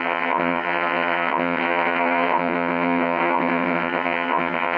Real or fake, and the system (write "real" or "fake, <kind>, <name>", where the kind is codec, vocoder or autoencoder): fake, vocoder, HiFi-GAN